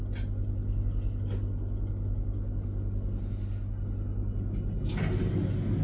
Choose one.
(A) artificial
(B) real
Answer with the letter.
B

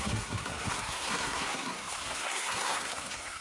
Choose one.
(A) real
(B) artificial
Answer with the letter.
B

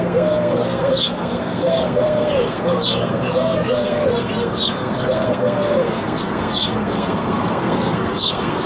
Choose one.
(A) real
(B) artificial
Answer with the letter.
B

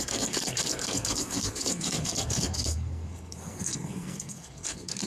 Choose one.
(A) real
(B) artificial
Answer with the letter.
B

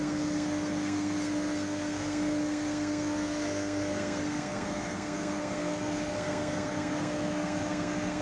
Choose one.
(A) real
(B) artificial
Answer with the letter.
B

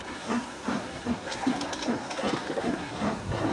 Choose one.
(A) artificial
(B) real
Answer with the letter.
A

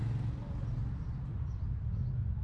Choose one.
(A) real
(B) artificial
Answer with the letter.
A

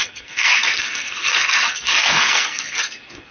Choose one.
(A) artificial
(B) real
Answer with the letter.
A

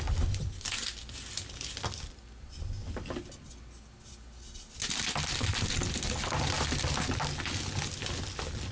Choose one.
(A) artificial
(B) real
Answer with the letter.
B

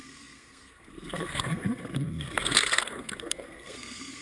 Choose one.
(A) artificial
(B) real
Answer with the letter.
A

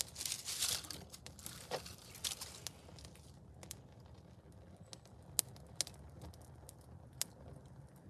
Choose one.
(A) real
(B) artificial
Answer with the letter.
A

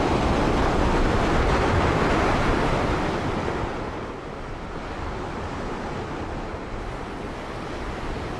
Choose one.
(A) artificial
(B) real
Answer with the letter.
B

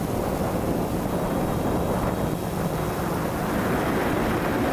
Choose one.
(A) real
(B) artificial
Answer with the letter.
A